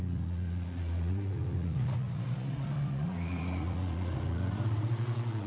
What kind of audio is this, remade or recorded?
remade